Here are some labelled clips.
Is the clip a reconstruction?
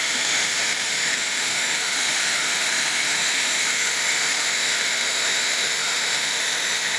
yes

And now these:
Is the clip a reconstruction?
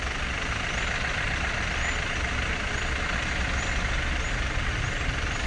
no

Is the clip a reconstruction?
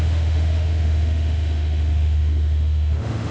yes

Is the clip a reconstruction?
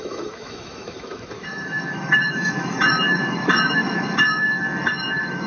yes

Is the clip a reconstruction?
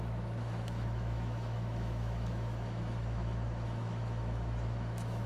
yes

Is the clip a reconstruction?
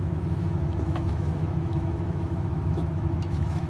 yes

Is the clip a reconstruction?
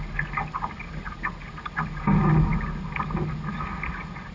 no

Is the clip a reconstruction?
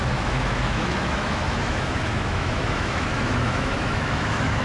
yes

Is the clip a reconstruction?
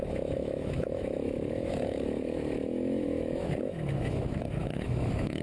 yes